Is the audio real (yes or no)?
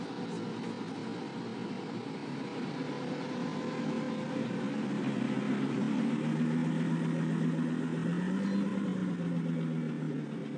yes